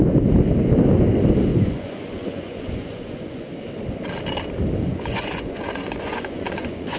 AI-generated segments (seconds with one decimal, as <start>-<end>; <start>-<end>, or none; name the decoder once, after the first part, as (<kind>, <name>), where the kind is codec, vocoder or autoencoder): 1.5-3.5 (vocoder, Vocos); 4.9-7.0